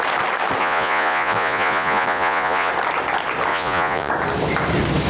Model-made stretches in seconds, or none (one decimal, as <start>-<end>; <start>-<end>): 0.6-2.7; 3.5-4.1